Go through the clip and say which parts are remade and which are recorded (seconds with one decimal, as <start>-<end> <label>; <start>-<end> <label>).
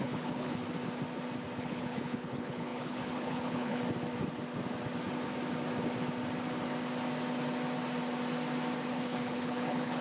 0.0-0.6 remade; 0.6-1.6 recorded; 1.6-3.8 remade; 3.8-8.9 recorded; 8.9-10.0 remade